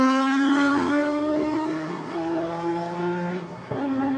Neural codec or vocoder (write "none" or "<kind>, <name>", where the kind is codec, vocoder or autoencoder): codec, SNAC